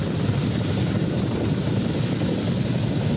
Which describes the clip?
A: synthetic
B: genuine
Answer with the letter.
A